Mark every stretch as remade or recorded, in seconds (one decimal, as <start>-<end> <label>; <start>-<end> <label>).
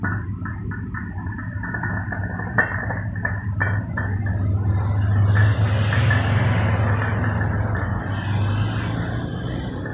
0.0-9.9 recorded